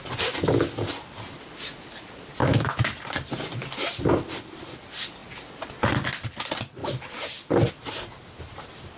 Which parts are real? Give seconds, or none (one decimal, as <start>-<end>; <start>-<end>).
0.0-2.4; 3.0-9.0